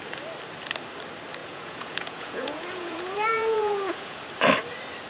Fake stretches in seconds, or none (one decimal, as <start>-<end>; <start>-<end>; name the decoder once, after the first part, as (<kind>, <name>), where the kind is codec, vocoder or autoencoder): 1.4-4.2 (vocoder, Vocos)